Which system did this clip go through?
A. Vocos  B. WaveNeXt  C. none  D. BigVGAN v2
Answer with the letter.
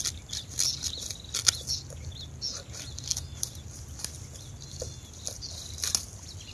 C